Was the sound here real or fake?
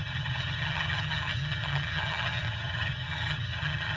fake